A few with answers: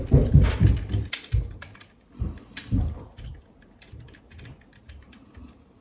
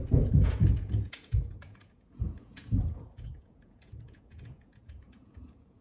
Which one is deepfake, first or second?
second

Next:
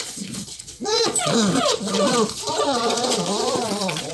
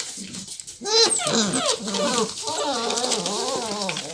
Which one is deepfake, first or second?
first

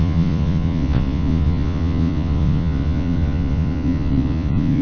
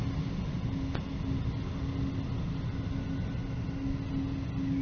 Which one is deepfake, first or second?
first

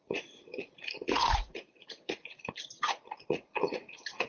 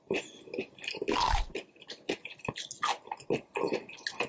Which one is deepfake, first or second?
first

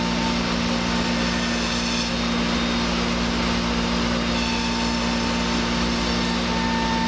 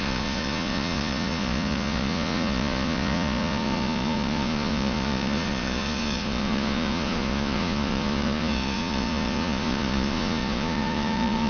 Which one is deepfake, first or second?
second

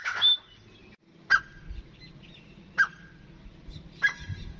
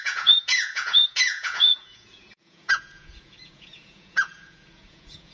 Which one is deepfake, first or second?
second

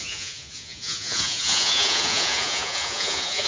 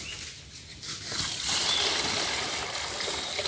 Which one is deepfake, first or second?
first